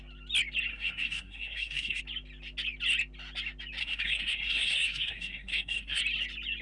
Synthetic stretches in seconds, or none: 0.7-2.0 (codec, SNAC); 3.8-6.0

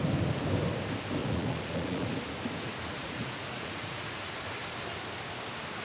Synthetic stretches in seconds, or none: 1.2-2.1 (vocoder, Vocos); 3.0-4.2

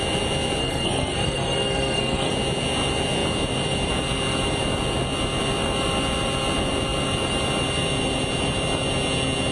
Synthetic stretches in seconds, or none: 0.6-2.3 (codec, SNAC)

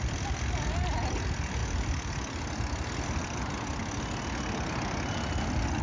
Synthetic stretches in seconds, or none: none

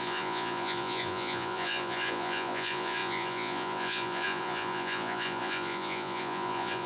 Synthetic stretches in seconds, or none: 0.0-6.9 (vocoder, Vocos)